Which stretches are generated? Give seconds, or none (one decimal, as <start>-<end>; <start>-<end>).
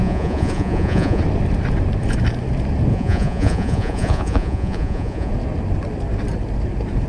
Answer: 0.0-1.2; 2.9-5.3